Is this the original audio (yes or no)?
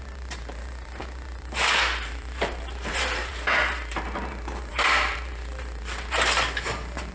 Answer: no